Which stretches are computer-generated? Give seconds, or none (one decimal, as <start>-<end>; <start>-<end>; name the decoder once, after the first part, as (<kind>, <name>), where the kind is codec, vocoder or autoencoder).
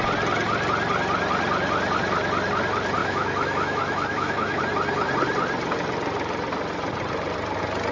3.0-4.6 (autoencoder, DAC-VAE)